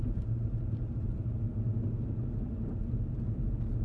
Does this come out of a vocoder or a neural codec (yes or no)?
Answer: no